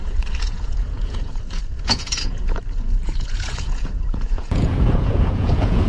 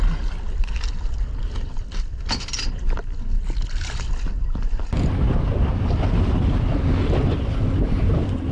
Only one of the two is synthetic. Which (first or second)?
first